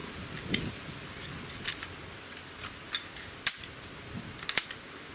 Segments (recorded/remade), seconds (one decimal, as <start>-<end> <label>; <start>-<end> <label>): 0.0-0.7 remade; 0.7-5.1 recorded